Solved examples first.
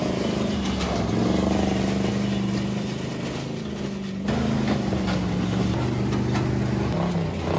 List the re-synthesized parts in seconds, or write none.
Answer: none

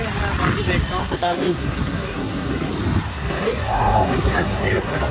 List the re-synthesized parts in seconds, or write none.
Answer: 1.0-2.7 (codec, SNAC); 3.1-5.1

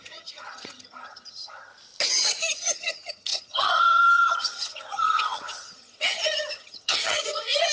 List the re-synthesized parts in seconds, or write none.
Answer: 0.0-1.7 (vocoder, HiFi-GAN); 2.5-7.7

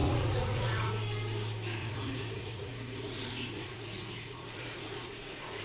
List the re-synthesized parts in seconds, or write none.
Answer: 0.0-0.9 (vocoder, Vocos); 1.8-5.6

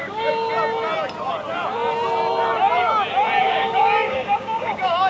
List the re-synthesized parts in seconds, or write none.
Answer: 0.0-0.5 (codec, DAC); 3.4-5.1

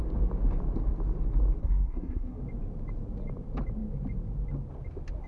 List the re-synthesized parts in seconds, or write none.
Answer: 1.6-2.4 (codec, SNAC)